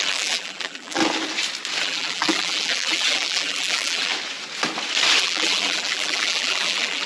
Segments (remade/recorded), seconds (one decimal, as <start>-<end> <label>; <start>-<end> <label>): 0.0-1.0 remade; 1.0-1.8 recorded; 1.8-4.1 remade; 4.1-5.2 recorded; 5.2-7.1 remade